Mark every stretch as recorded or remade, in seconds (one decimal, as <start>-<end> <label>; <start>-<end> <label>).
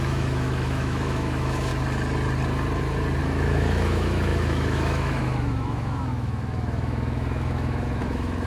0.0-1.7 remade; 1.7-3.2 recorded; 3.2-8.5 remade